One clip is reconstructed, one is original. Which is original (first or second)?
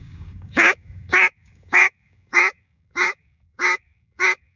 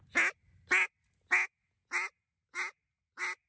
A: second